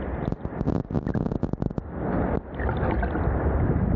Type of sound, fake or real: real